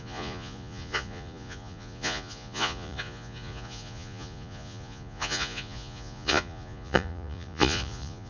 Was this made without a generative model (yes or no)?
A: no